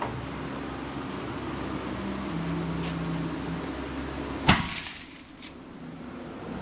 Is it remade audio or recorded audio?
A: recorded